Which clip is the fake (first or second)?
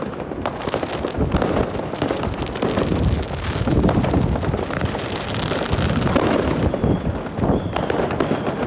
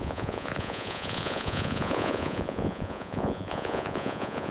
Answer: second